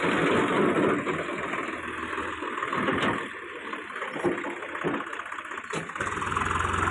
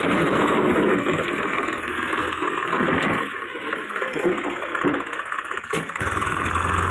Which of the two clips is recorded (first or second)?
first